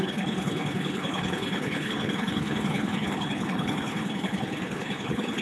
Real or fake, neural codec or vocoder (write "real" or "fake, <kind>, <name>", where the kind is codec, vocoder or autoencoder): fake, codec, HILCodec